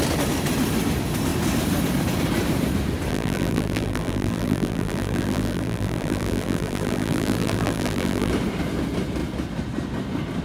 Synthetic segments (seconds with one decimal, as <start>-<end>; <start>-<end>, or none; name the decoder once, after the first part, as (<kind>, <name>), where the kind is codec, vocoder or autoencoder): 3.1-8.3 (vocoder, BigVGAN v2)